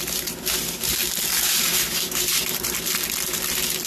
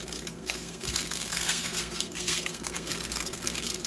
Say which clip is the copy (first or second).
second